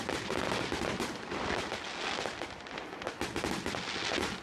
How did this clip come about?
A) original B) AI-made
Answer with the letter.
A